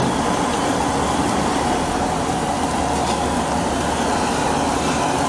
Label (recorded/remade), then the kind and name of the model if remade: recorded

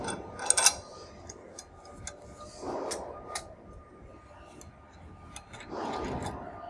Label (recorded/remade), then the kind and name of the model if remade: recorded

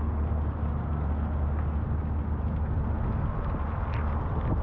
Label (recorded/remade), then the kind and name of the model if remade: recorded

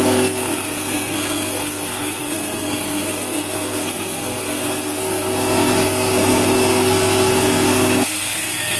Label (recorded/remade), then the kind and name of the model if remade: remade, codec, SNAC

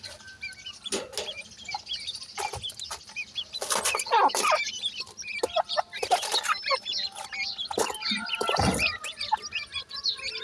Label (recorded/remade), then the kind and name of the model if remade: recorded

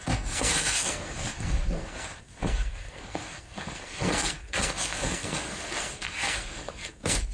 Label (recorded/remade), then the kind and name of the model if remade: remade, codec, SNAC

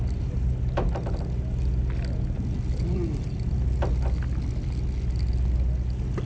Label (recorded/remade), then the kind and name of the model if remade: recorded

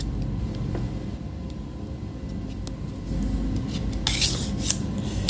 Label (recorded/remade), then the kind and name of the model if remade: recorded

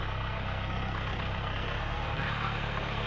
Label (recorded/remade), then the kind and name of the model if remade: remade, codec, SNAC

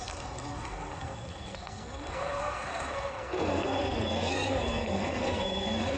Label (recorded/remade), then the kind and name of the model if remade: remade, codec, SNAC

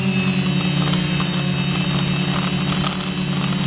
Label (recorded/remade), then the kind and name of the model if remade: recorded